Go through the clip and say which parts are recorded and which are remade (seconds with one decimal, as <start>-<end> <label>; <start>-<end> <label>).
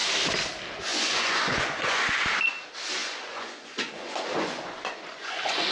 0.0-0.9 recorded; 0.9-2.2 remade; 2.2-3.0 recorded; 3.0-5.7 remade